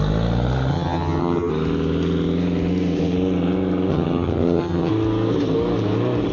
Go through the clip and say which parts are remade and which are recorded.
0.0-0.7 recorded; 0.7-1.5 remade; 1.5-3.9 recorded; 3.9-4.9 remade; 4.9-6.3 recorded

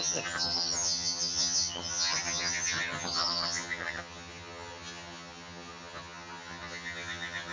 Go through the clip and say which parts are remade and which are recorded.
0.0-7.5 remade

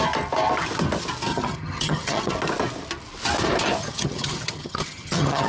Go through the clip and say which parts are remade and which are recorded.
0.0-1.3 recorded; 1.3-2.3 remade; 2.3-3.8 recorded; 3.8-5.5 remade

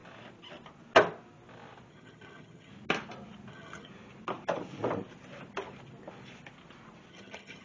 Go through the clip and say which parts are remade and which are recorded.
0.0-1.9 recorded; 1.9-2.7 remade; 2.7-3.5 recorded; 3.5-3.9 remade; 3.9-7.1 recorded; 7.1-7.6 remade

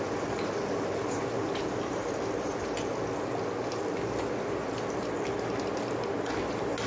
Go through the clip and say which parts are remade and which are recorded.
0.0-6.9 recorded

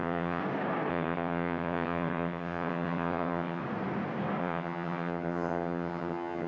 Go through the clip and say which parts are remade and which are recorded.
0.0-0.4 remade; 0.4-0.9 recorded; 0.9-3.6 remade; 3.6-4.4 recorded; 4.4-6.5 remade

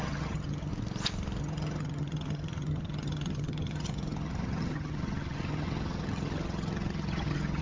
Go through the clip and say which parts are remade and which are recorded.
0.0-0.7 remade; 0.7-1.4 recorded; 1.4-7.6 remade

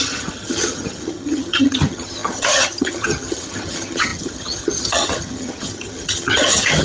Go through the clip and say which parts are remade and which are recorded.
0.0-6.8 remade